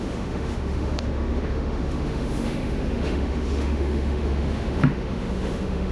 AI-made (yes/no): yes